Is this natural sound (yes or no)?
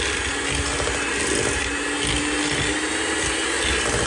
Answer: yes